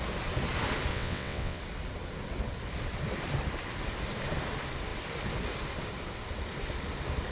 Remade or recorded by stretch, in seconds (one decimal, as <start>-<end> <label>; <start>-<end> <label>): 0.0-0.9 recorded; 0.9-1.6 remade; 1.6-7.3 recorded

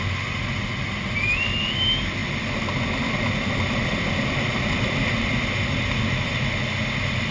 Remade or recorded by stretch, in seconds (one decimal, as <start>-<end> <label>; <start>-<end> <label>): 0.0-7.3 recorded